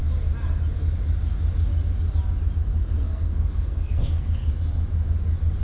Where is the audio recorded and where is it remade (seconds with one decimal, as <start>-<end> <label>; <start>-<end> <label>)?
0.0-2.7 recorded; 2.7-4.5 remade; 4.5-5.6 recorded